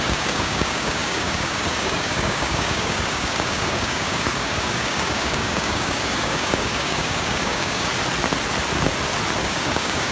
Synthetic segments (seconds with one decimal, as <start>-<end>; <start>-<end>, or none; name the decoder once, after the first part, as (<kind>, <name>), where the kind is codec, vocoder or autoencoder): 0.0-7.9 (codec, DAC); 9.4-10.1